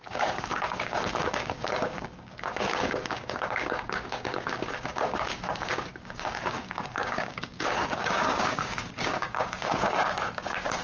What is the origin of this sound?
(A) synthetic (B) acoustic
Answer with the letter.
A